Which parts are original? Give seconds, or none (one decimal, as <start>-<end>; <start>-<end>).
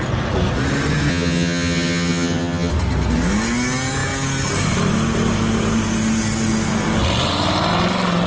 0.0-1.1; 2.7-8.3